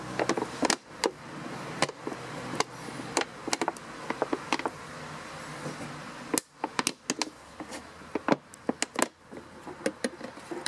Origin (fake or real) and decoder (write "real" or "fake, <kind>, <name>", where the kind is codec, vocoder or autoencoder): real